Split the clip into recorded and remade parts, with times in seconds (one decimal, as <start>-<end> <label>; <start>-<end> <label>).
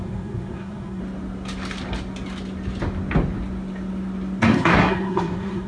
0.0-1.0 remade; 1.0-4.4 recorded; 4.4-5.7 remade